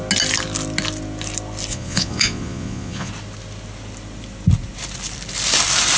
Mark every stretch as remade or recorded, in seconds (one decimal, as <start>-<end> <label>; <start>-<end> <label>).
0.0-1.7 recorded; 1.7-3.1 remade; 3.1-6.0 recorded